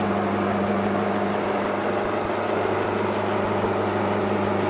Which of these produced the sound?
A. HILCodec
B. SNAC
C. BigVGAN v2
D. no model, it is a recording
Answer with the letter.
D